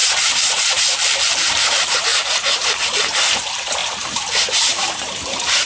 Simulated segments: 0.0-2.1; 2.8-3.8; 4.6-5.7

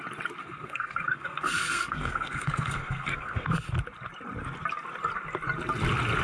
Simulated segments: 0.4-3.5